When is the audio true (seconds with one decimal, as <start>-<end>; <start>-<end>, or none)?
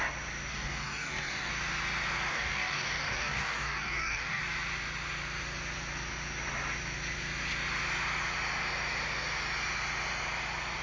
0.0-0.5; 1.5-2.3; 4.4-10.8